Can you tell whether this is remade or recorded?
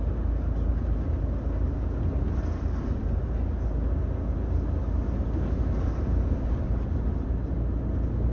recorded